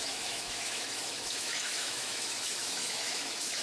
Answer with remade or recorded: remade